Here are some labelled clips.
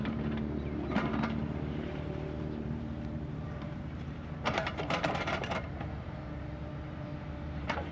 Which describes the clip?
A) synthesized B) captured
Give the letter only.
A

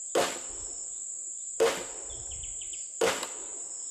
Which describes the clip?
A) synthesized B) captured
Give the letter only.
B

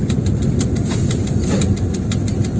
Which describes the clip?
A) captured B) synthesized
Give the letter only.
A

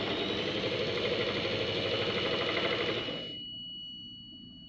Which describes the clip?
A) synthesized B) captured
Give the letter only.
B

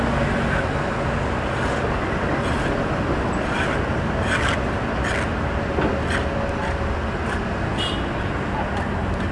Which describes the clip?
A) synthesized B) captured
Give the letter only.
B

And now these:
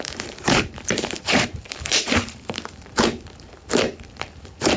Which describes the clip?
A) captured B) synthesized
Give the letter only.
B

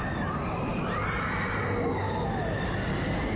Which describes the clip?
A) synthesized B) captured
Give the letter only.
B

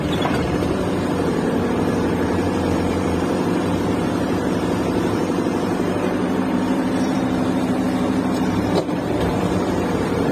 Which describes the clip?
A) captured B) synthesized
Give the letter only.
B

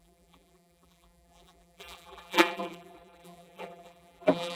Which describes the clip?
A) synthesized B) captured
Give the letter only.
A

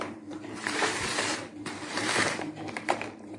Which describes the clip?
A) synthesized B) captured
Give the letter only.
A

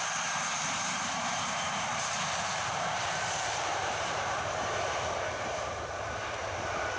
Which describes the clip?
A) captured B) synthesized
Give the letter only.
B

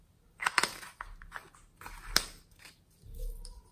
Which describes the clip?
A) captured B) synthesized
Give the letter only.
A